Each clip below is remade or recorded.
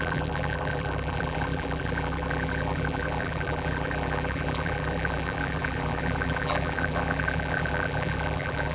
remade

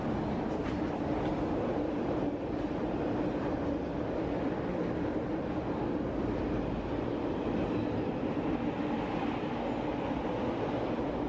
recorded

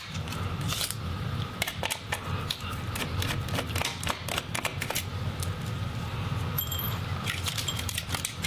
remade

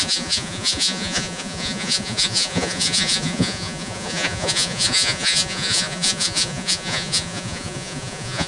remade